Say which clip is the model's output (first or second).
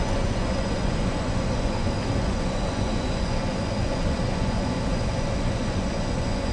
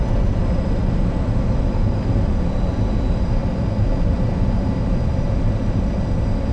first